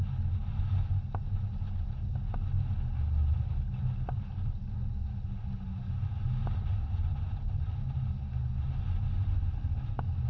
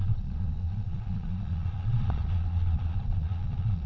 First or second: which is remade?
second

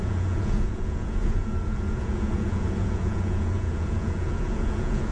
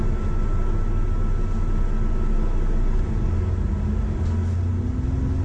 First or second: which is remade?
first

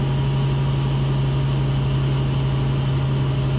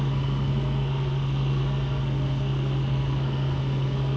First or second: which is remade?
second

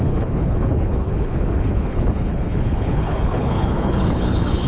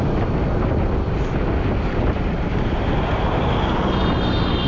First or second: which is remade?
first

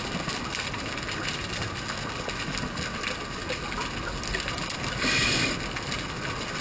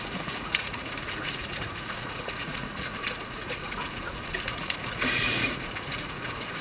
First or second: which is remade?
second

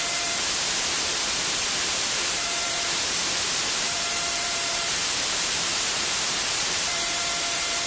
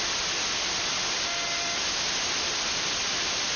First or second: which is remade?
first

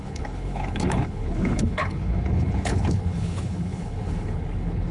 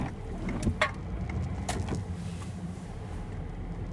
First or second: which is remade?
first